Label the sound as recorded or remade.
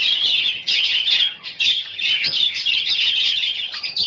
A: remade